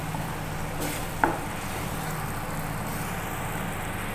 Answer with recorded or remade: recorded